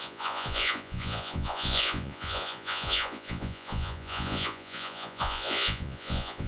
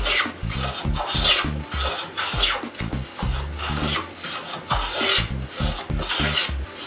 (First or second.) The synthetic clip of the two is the first